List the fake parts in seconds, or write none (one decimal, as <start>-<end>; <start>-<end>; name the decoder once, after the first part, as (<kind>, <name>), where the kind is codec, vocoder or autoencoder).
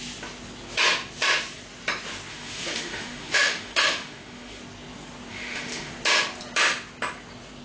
2.3-4.6 (autoencoder, DAC-VAE); 5.3-5.9